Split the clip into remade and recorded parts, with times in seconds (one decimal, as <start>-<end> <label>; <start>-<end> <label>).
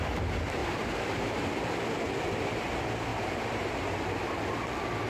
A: 0.0-0.6 recorded; 0.6-1.5 remade; 1.5-3.1 recorded; 3.1-3.7 remade; 3.7-5.1 recorded